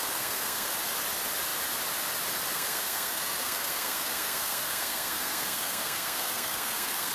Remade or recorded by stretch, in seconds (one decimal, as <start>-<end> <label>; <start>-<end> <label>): 0.0-0.7 remade; 0.7-2.5 recorded; 2.5-7.1 remade